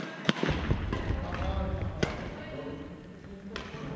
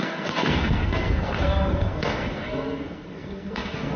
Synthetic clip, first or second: second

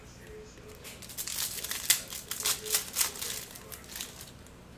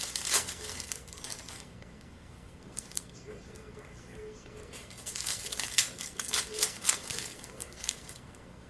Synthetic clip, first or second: second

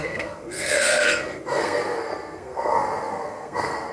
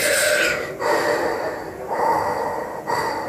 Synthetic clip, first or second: first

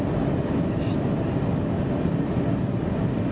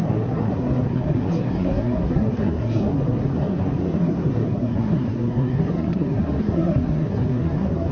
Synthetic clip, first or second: second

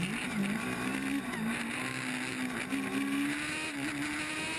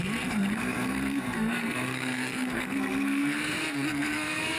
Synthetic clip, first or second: second